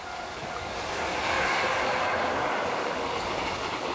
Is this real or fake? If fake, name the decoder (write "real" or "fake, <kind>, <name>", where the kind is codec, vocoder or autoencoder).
fake, codec, DAC